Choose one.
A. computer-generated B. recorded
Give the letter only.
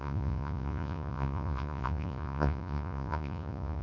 A